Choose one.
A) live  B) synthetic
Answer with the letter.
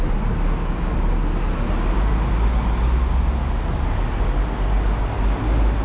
A